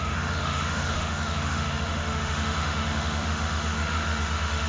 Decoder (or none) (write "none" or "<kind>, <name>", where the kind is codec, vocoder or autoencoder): autoencoder, DAC-VAE